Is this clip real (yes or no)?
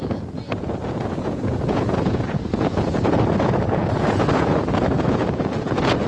no